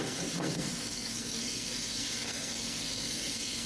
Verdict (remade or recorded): remade